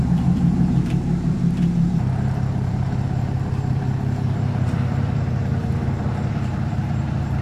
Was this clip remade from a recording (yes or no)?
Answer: yes